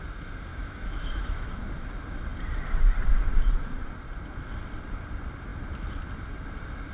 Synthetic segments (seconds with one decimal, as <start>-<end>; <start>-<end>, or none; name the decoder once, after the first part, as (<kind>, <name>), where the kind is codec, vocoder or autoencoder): 0.5-1.6 (autoencoder, DAC-VAE)